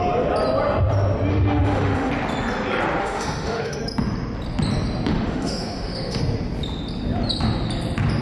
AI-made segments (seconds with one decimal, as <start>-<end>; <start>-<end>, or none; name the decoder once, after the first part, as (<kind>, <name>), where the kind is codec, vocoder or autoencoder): 1.3-2.1 (autoencoder, DAC-VAE); 3.0-3.8; 5.1-6.2